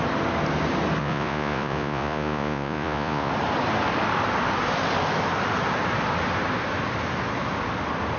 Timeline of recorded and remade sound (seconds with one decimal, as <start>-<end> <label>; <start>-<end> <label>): 0.0-1.0 recorded; 1.0-3.3 remade; 3.3-8.2 recorded